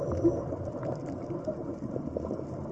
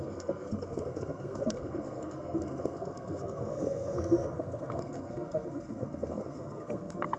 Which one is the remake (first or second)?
second